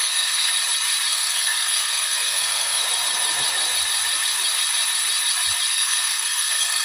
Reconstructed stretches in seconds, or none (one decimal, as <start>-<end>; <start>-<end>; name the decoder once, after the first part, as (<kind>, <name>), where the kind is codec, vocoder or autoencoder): 0.0-0.5 (codec, SNAC); 1.1-2.8; 5.7-6.8